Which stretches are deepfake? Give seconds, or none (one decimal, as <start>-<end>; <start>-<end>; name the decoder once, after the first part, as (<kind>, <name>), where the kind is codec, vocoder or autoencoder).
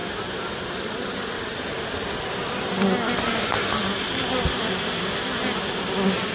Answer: none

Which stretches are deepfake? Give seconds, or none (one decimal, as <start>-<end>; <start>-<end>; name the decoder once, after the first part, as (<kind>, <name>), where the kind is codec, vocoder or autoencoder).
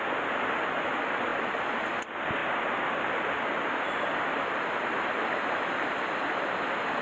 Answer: none